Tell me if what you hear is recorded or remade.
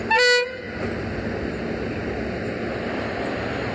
recorded